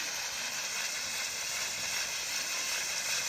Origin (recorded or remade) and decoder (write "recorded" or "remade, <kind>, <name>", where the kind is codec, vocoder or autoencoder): recorded